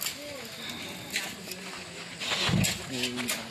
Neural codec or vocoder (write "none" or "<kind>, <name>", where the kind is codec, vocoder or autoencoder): none